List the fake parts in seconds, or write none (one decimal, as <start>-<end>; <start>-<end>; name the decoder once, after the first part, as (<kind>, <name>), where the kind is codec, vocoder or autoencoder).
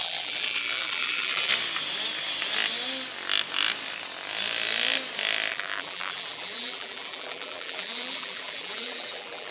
0.0-1.5 (vocoder, BigVGAN v2); 5.5-9.5